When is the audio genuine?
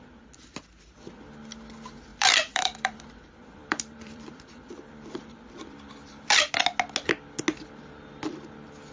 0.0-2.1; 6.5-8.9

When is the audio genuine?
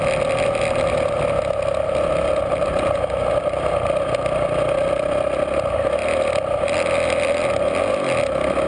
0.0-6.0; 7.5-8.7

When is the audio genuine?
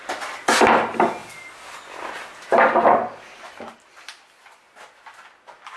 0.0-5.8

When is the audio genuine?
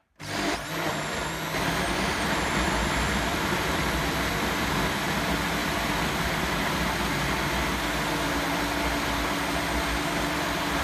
4.7-5.6; 6.6-10.8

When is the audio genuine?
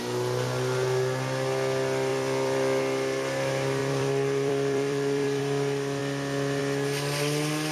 0.0-2.1; 2.8-3.8; 5.4-7.7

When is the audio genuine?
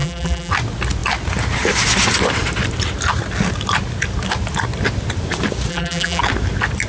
0.5-5.7; 6.2-6.9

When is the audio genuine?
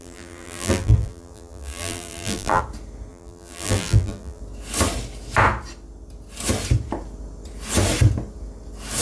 2.6-3.1; 4.4-9.0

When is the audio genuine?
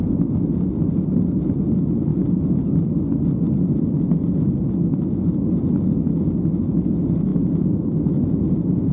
0.0-7.3; 8.3-8.9